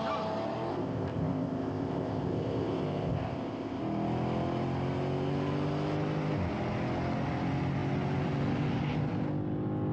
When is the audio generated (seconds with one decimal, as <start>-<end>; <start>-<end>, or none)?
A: 0.7-3.8